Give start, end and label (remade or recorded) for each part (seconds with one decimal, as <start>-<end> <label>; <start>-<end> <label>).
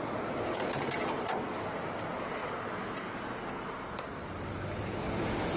0.0-5.6 recorded